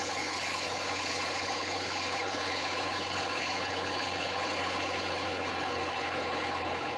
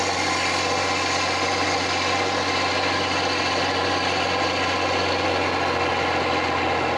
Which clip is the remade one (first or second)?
first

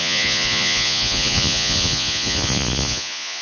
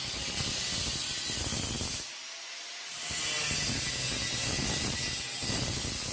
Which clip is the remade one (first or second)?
first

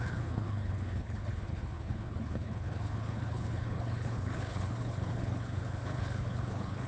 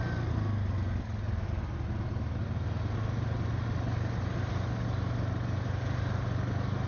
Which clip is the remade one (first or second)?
first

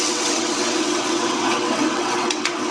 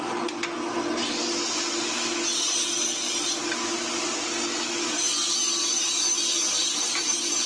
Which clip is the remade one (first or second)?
first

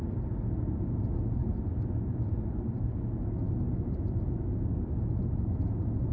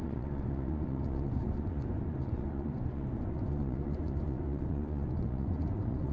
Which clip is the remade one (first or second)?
second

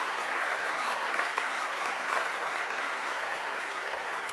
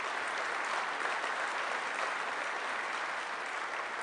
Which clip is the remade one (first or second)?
first